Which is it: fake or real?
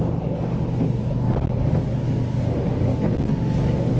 fake